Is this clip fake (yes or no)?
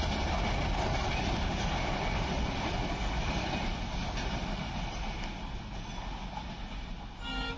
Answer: no